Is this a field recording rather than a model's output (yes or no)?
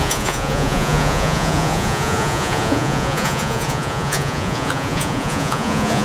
no